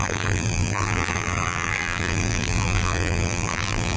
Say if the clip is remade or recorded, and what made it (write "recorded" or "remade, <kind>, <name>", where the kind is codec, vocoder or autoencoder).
remade, vocoder, BigVGAN v2